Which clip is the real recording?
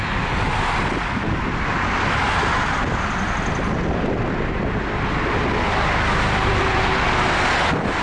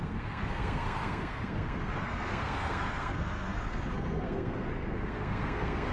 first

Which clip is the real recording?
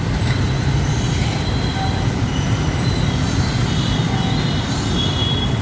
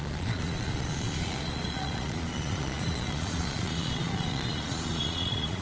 first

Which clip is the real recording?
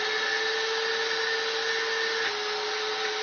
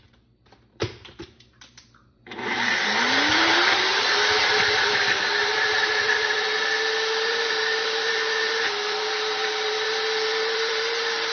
first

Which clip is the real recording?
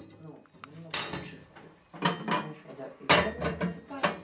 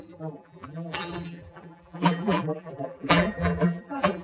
first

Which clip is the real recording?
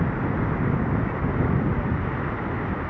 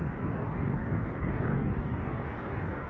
first